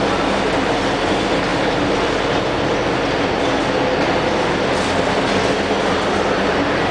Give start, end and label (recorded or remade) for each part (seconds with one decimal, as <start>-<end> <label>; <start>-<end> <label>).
0.0-1.5 recorded; 1.5-2.4 remade; 2.4-6.9 recorded